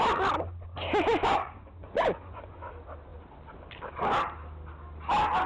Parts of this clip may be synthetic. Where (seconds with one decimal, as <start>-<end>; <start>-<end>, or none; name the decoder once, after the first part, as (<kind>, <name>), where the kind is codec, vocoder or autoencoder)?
1.3-2.7 (vocoder, Vocos)